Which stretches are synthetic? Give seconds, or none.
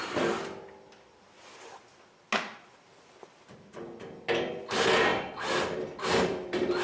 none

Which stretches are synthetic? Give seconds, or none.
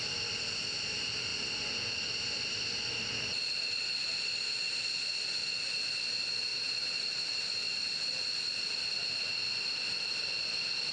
6.5-7.4 (vocoder, BigVGAN v2)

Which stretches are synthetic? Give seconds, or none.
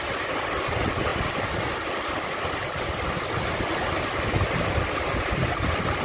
none